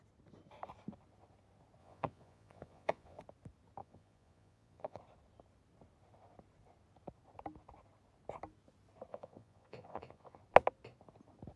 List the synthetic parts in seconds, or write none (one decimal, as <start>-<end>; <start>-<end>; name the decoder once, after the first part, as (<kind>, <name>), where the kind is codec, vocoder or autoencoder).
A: 1.8-3.2 (vocoder, Vocos); 3.8-5.0; 9.1-10.4